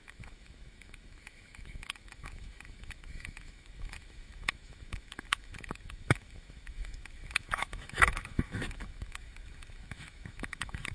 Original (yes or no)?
no